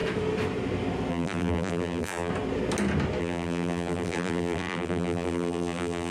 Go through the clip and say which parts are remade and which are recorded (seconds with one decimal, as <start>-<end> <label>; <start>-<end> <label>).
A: 0.0-1.1 recorded; 1.1-2.3 remade; 2.3-3.2 recorded; 3.2-6.1 remade